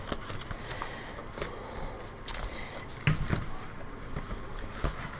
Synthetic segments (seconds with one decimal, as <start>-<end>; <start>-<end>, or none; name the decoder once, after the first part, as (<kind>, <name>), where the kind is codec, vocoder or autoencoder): none